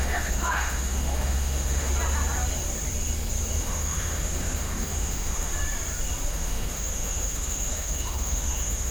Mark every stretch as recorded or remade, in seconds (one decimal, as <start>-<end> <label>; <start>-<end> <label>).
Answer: 0.0-1.9 remade; 1.9-3.6 recorded; 3.6-5.5 remade; 5.5-6.3 recorded; 6.3-8.9 remade